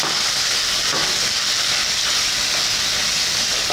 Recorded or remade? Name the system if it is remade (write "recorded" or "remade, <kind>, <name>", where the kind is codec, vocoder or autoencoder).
recorded